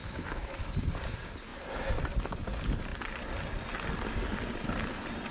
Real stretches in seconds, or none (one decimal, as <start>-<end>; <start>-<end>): 0.6-5.3